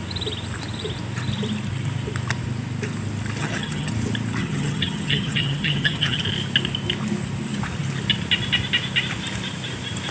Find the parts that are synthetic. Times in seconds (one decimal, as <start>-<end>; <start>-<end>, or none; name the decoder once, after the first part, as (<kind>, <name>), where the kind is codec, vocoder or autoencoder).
3.4-3.9 (vocoder, HiFi-GAN); 4.4-6.2